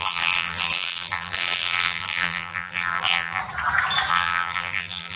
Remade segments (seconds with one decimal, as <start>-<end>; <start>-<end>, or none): 0.0-3.4; 4.1-5.2